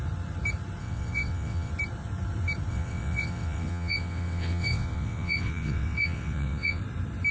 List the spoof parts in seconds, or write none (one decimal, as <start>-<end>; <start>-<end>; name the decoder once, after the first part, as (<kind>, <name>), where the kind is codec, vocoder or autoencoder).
0.8-1.7 (vocoder, WaveNeXt); 2.7-6.8